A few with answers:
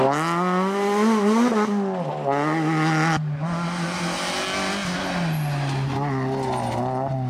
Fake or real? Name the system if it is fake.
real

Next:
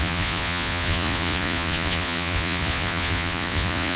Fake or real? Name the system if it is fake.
fake, vocoder, Vocos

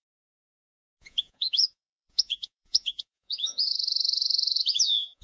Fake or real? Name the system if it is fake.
fake, vocoder, Vocos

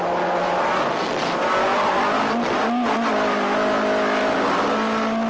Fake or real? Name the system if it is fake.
real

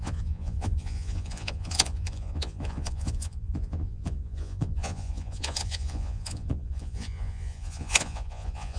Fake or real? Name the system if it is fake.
fake, vocoder, Vocos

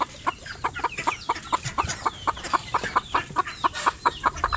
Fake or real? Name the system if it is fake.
real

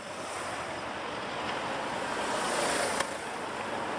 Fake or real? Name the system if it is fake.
real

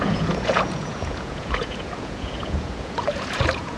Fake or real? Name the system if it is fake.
fake, vocoder, Vocos